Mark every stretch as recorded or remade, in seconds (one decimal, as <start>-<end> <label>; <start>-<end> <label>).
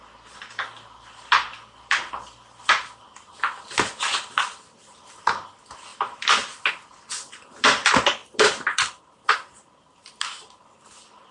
0.0-11.3 recorded